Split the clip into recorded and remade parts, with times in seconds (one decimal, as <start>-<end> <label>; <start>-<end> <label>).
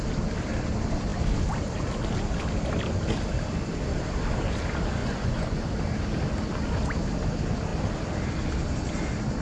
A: 0.0-5.0 recorded; 5.0-5.7 remade; 5.7-9.4 recorded